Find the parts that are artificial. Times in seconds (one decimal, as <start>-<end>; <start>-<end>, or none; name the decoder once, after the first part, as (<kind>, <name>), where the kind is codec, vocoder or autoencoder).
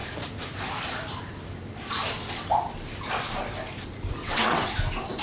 4.2-4.7 (vocoder, WaveNeXt)